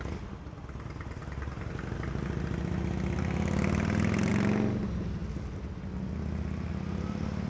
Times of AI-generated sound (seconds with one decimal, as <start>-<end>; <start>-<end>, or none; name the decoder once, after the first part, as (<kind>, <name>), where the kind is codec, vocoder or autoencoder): none